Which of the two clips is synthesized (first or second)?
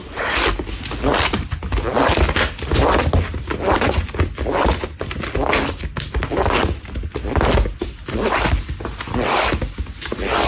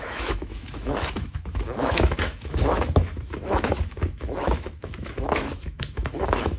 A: second